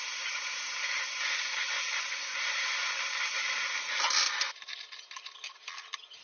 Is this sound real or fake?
real